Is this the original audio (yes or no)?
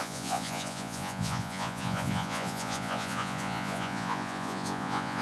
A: no